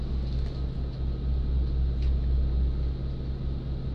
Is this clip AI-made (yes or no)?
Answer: no